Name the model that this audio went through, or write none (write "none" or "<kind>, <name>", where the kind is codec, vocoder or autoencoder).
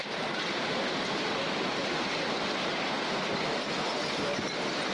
none